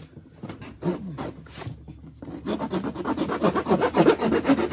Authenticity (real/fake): real